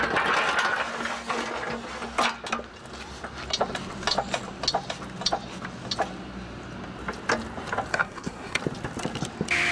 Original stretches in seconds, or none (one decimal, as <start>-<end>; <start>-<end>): 0.0-7.9; 8.6-9.7